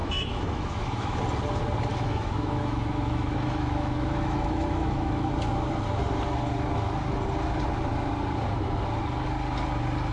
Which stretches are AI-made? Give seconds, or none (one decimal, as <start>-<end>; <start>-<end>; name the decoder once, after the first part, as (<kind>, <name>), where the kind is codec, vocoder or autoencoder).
0.0-1.2 (autoencoder, DAC-VAE); 1.9-5.3